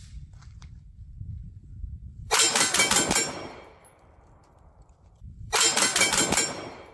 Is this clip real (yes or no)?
no